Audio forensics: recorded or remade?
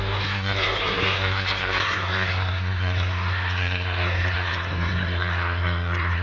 remade